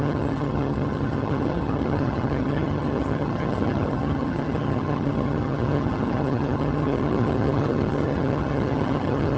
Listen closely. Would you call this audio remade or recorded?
remade